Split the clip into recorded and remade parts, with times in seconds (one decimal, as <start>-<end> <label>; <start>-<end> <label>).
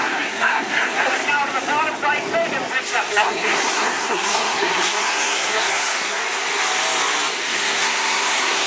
0.0-1.2 remade; 1.2-3.1 recorded; 3.1-6.2 remade; 6.2-7.6 recorded; 7.6-8.7 remade